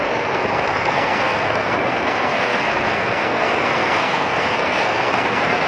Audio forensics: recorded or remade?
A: remade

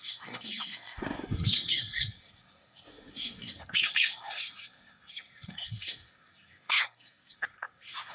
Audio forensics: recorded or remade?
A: remade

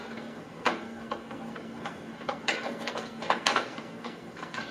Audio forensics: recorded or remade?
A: remade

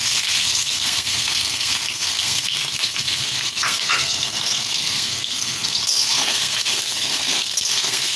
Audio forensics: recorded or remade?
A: remade